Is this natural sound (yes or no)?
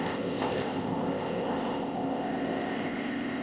no